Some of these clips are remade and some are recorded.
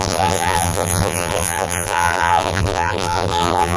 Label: remade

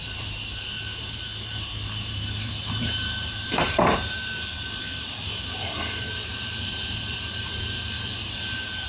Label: remade